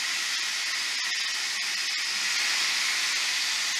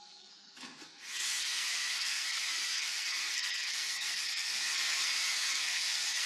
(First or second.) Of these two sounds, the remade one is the second